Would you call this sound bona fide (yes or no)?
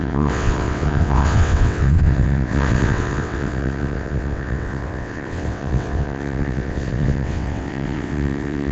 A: no